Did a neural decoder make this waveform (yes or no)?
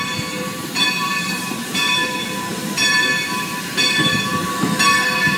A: yes